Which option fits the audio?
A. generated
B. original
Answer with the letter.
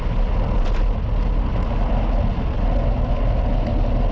B